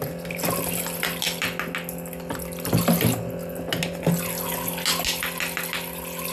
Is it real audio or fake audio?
real